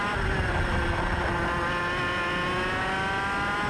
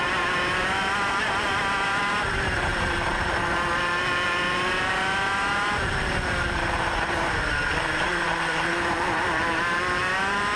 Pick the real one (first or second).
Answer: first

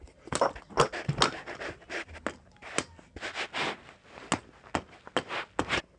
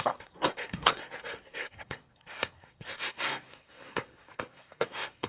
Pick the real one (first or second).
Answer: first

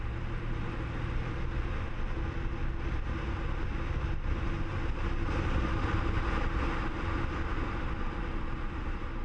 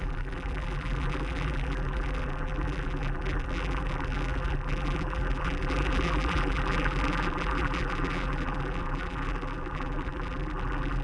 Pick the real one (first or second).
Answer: first